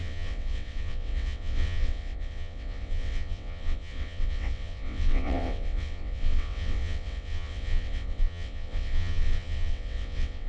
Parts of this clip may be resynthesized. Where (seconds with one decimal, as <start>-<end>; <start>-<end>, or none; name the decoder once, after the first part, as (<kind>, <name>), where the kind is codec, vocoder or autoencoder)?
0.0-10.5 (vocoder, WaveNeXt)